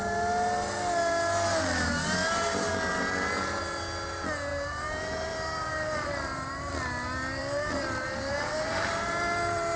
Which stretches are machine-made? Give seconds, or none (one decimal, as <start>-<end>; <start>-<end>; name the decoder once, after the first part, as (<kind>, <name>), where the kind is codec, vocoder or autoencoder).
1.5-2.7 (vocoder, BigVGAN v2); 4.5-6.7; 7.4-9.8

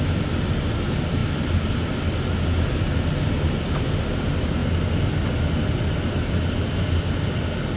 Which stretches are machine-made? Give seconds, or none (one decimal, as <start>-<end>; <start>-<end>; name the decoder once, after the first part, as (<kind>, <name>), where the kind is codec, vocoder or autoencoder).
none

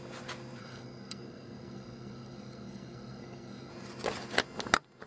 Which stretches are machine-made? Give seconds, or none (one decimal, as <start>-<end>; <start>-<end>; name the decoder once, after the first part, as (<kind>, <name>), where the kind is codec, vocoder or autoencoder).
0.6-3.7 (codec, SNAC)